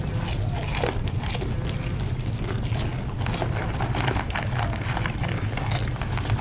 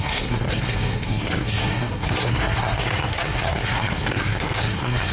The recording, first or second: first